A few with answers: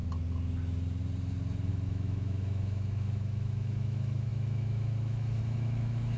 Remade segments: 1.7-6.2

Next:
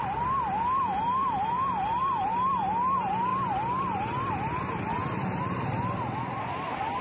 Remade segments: none

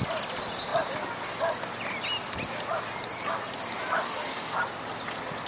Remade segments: none

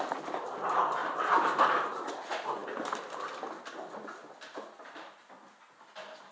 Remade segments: 1.0-2.1

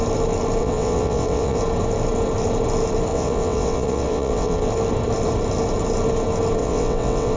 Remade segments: 0.6-1.6; 3.1-4.7; 6.6-7.4

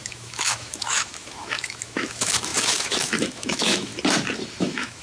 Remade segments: 0.0-3.9; 4.6-5.0

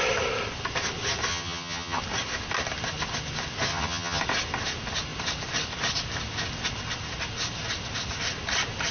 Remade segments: 1.3-2.0; 3.7-4.2

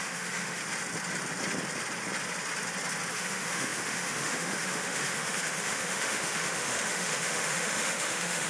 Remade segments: 0.0-0.6; 3.1-8.5